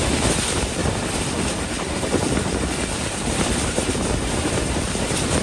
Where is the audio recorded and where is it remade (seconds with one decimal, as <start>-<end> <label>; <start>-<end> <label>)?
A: 0.0-0.8 recorded; 0.8-3.6 remade; 3.6-5.4 recorded